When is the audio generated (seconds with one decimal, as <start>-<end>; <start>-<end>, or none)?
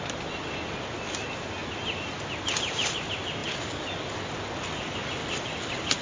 none